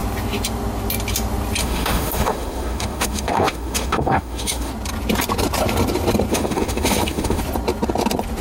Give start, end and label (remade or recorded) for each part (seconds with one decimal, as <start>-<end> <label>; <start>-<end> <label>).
0.0-1.6 recorded; 1.6-4.7 remade; 4.7-6.3 recorded; 6.3-7.4 remade; 7.4-8.4 recorded